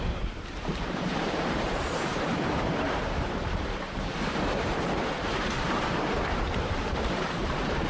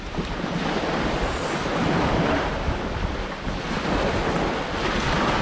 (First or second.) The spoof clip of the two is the first